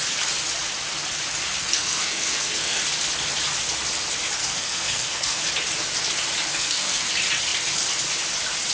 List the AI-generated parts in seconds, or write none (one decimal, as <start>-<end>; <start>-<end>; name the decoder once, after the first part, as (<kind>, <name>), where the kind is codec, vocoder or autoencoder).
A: 1.6-2.8 (codec, SNAC); 4.4-5.4; 6.5-7.1